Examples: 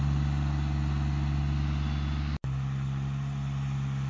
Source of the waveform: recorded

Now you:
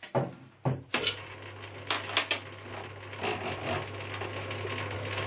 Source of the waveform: recorded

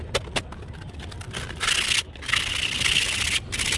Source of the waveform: recorded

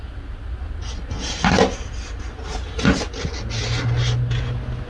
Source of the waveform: recorded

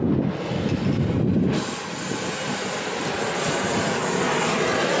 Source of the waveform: recorded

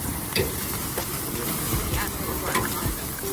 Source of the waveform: recorded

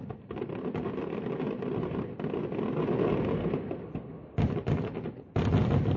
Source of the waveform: recorded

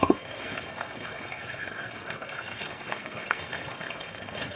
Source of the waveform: remade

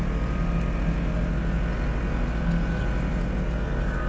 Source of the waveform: recorded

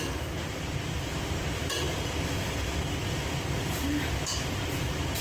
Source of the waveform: recorded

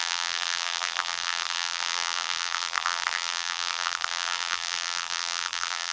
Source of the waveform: remade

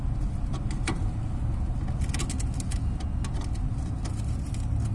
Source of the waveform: recorded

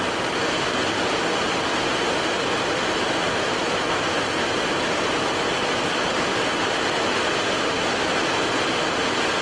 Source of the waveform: recorded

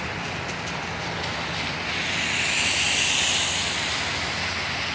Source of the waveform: recorded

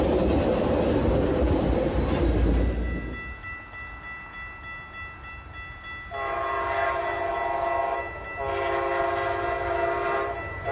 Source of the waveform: recorded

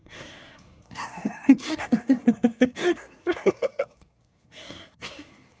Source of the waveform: remade